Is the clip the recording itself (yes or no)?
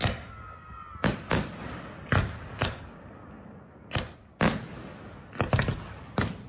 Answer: yes